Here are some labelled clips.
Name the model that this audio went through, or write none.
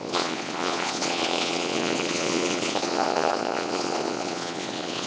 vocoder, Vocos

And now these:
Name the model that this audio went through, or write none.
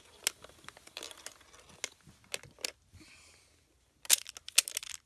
none